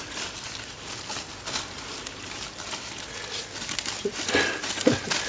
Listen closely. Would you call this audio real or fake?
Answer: real